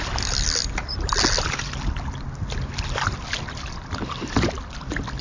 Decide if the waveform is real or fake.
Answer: real